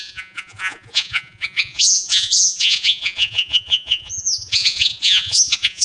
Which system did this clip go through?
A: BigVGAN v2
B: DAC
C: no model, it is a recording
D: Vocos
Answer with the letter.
D